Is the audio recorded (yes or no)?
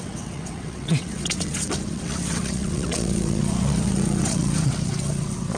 no